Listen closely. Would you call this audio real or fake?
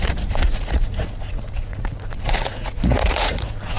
fake